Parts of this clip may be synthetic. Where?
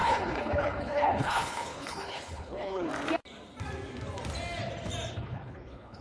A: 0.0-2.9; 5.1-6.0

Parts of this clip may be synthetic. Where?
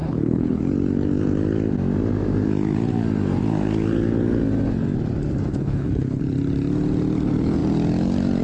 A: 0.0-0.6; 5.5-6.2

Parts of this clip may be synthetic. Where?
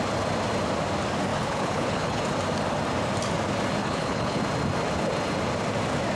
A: 1.3-2.2; 3.8-4.4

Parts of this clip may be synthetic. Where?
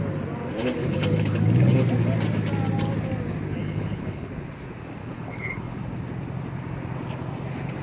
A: 0.8-1.4; 3.6-4.3; 5.0-5.8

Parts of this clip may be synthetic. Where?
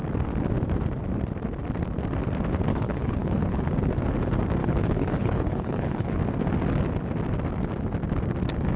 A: 2.7-3.7; 4.6-6.2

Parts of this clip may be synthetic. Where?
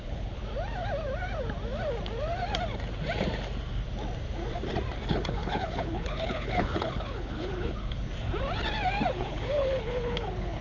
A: 0.0-0.4; 5.1-8.1; 9.1-10.6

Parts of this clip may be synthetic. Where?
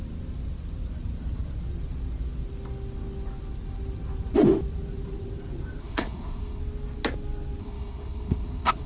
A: 5.8-6.6; 7.6-8.9